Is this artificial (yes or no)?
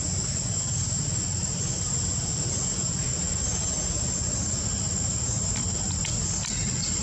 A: no